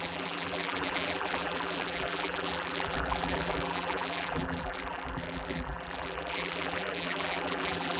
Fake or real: fake